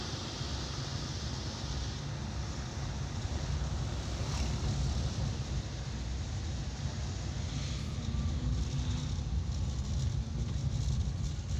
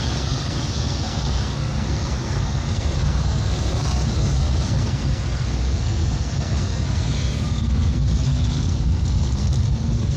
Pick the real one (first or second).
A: first